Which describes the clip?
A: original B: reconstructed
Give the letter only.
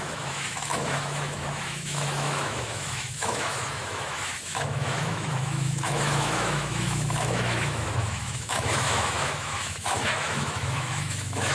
B